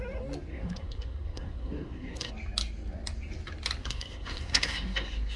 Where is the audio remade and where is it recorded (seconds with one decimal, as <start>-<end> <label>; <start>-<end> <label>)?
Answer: 0.0-0.5 recorded; 0.5-2.3 remade; 2.3-3.8 recorded; 3.8-5.4 remade